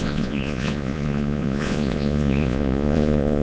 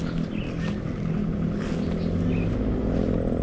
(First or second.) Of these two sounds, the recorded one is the second